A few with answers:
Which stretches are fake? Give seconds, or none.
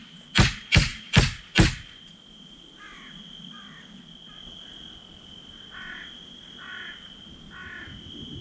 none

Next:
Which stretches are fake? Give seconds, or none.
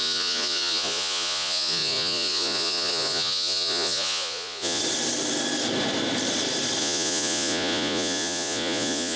0.0-4.8 (vocoder, Vocos); 6.8-9.2